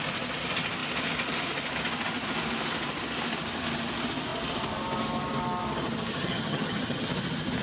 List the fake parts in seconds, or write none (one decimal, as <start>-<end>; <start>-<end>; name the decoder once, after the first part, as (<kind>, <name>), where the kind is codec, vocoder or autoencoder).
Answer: 6.1-7.1 (vocoder, HiFi-GAN)